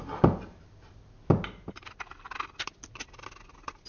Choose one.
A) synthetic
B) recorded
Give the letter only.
B